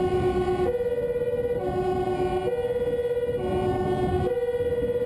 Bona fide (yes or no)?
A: yes